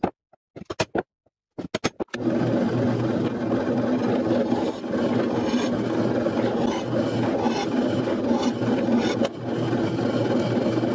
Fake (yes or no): no